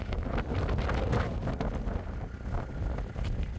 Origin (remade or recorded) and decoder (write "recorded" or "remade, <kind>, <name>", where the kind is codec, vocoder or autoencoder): recorded